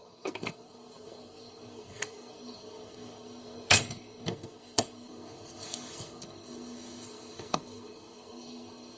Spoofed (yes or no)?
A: yes